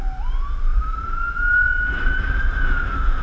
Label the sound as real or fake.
real